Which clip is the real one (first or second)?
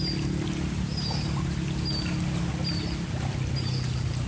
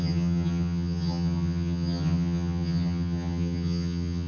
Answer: first